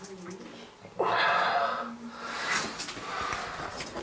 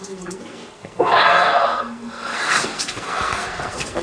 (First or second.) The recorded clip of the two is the first